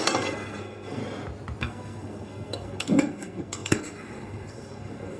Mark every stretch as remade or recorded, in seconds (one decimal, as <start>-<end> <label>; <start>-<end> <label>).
0.0-1.0 remade; 1.0-1.6 recorded; 1.6-5.2 remade